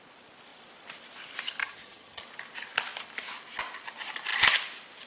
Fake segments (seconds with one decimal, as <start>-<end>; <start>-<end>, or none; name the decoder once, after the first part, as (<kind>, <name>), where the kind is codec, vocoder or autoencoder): 1.6-2.2 (vocoder, HiFi-GAN)